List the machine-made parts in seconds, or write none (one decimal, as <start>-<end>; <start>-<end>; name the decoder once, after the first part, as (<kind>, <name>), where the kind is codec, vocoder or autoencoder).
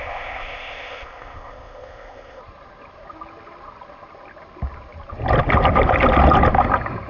0.0-2.4 (codec, ZipCodec)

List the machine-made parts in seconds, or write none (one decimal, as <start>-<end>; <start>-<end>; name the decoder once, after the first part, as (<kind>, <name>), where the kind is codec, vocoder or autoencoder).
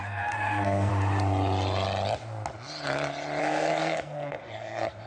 0.0-0.9 (codec, SNAC); 3.4-5.1